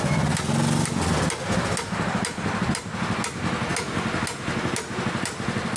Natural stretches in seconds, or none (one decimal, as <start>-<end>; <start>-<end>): 0.0-5.8